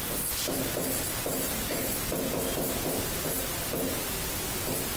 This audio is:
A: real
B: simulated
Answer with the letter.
A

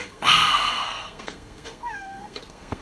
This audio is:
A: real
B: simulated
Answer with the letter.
B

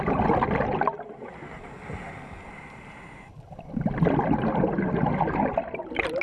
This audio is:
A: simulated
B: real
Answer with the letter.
B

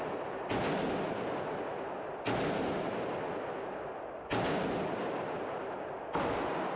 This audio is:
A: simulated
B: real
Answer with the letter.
B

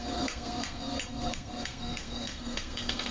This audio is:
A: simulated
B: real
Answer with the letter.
A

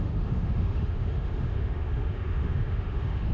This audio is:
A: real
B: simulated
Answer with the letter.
B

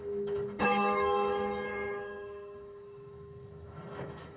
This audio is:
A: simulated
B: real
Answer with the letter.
A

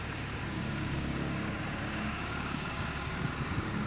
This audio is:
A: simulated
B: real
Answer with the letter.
A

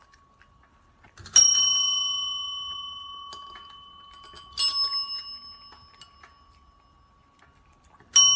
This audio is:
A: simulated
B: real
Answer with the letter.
B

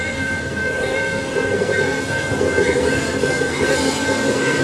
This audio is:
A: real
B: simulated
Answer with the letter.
B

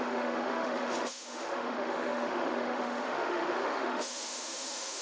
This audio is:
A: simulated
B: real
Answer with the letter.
A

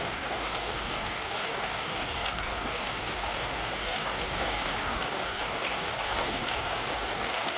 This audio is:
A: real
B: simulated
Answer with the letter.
B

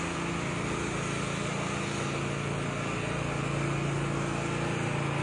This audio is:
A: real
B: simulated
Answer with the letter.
A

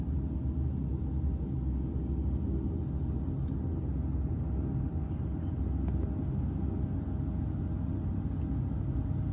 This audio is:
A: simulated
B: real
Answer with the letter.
B